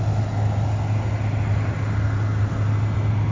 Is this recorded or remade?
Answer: recorded